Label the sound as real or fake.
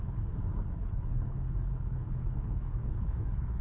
fake